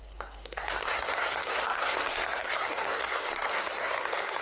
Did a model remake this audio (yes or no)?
yes